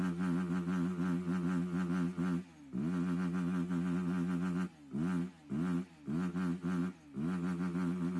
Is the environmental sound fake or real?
real